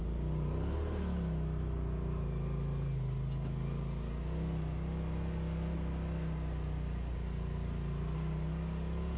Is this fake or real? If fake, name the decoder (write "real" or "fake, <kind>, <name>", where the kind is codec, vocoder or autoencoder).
real